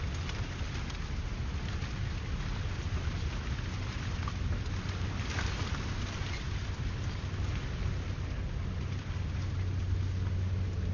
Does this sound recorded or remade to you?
recorded